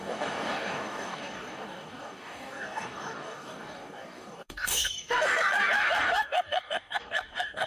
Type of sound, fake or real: fake